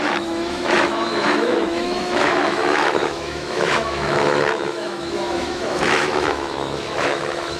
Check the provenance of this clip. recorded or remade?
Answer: remade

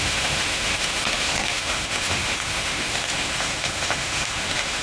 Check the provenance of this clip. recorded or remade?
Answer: remade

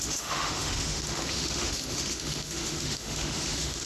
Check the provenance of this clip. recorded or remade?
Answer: remade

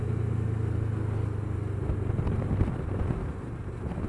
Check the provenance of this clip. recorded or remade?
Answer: recorded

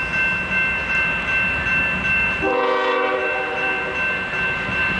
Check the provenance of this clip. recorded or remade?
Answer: recorded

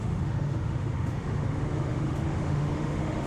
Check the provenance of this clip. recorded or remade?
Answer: remade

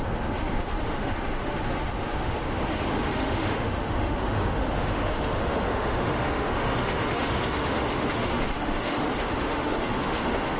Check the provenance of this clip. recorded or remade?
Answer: remade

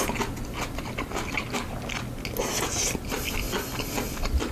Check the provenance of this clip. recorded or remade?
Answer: recorded